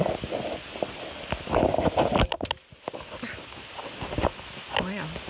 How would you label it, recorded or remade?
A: recorded